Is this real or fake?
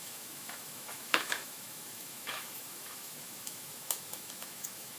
fake